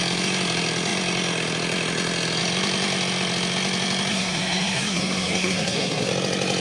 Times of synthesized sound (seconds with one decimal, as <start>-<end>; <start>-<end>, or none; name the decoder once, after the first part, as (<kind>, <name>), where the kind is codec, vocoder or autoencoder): 4.1-6.1 (codec, SNAC)